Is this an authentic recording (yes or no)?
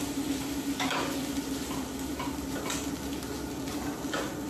yes